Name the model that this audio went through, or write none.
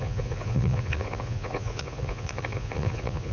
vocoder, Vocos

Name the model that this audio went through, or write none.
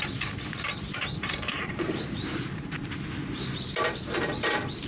vocoder, BigVGAN v2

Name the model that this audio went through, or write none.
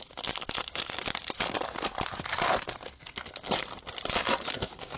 none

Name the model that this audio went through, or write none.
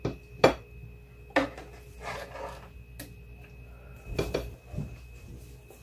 none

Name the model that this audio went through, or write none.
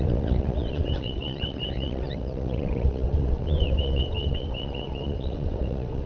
vocoder, WaveNeXt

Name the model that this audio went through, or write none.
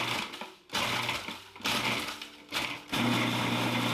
none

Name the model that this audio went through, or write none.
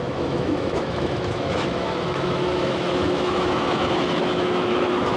autoencoder, DAC-VAE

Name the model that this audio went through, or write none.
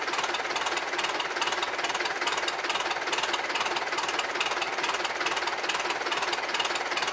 none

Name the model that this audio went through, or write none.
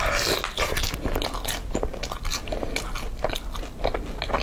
none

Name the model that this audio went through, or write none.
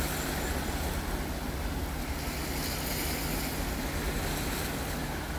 none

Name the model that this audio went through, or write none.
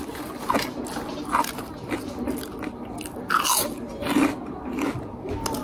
none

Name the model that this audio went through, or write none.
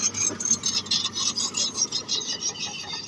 none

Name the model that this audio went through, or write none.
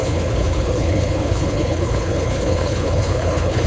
codec, HILCodec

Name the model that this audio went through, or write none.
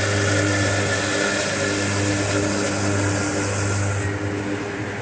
none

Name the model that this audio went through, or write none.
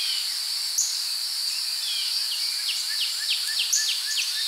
none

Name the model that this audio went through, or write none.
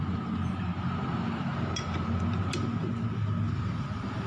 vocoder, BigVGAN v2